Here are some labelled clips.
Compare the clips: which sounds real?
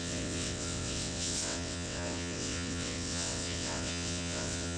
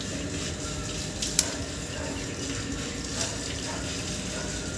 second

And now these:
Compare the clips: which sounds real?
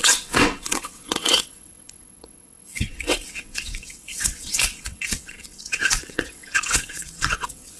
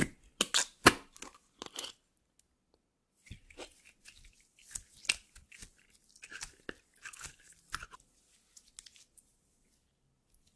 second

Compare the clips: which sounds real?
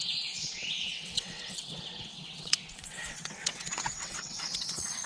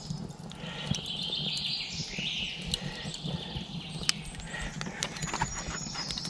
second